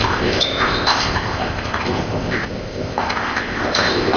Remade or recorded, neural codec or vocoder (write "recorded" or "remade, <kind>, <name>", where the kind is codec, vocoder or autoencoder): remade, codec, ZipCodec